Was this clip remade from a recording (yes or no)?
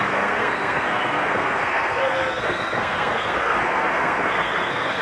yes